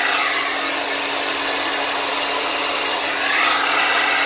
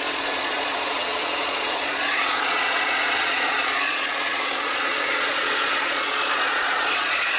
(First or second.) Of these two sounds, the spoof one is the second